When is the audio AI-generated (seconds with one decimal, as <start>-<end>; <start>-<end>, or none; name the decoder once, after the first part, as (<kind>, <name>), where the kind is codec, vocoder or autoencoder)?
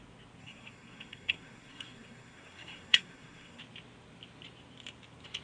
0.4-3.6 (codec, SNAC)